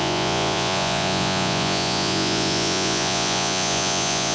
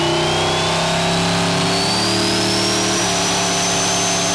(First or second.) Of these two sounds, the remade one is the first